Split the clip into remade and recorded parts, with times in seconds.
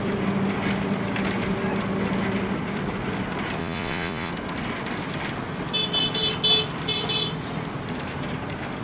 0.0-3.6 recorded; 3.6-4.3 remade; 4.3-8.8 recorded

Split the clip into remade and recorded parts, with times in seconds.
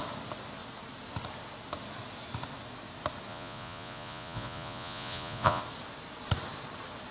0.0-3.3 recorded; 3.3-5.6 remade; 5.6-7.1 recorded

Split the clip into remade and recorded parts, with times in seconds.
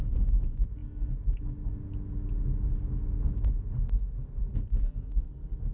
0.0-5.7 recorded